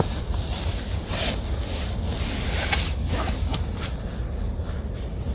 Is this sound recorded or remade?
recorded